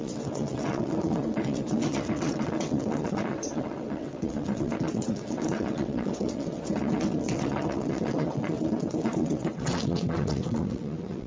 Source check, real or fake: fake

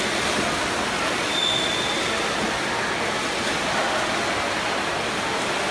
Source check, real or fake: real